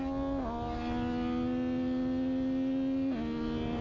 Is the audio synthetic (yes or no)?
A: no